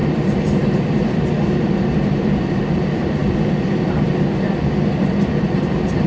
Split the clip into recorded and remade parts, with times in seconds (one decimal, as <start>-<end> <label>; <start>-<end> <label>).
0.0-2.8 remade; 2.8-6.1 recorded